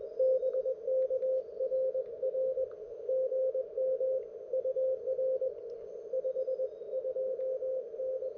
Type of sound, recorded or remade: recorded